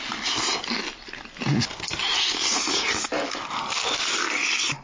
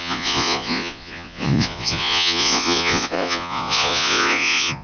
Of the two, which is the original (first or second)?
first